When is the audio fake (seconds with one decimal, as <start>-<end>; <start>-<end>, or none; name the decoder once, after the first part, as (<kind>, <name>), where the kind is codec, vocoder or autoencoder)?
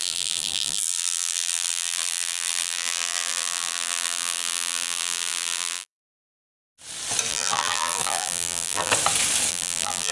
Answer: 0.0-6.5 (vocoder, BigVGAN v2); 7.3-8.9; 9.5-10.1